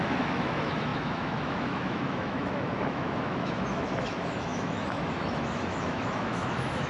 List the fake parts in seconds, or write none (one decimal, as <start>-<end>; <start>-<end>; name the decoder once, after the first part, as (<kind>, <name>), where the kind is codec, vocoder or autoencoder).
0.0-6.9 (autoencoder, DAC-VAE)